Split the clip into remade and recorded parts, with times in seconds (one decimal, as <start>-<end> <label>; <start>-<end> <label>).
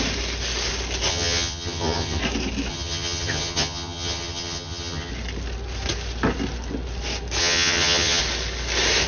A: 0.0-1.1 recorded; 1.1-2.2 remade; 2.2-2.7 recorded; 2.7-5.1 remade; 5.1-7.4 recorded; 7.4-8.2 remade; 8.2-9.1 recorded